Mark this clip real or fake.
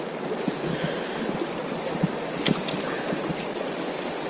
real